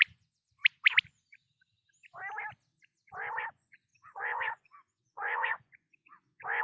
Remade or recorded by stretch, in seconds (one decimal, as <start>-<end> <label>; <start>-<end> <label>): 0.0-0.6 remade; 0.6-3.5 recorded; 3.5-6.6 remade